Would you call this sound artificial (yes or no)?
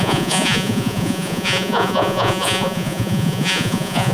yes